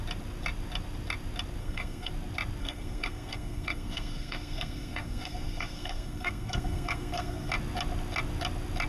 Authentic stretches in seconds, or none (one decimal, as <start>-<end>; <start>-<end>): 0.0-1.6; 2.1-2.6; 7.5-8.9